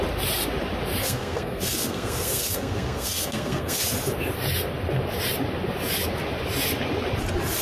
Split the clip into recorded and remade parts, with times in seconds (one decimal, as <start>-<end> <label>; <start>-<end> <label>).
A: 0.0-1.0 recorded; 1.0-3.8 remade; 3.8-7.6 recorded

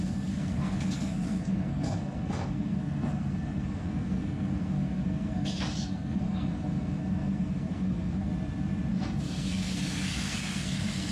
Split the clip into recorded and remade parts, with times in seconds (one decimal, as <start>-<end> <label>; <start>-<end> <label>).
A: 0.0-8.3 remade; 8.3-8.9 recorded; 8.9-11.1 remade

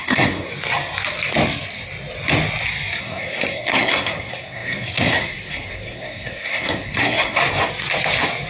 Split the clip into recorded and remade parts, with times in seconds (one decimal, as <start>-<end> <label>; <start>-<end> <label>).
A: 0.0-0.5 remade; 0.5-3.0 recorded; 3.0-7.4 remade; 7.4-8.5 recorded